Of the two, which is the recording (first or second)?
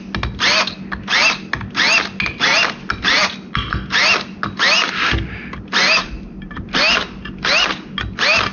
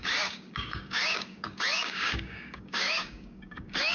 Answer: first